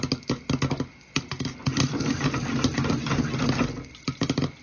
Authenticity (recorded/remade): recorded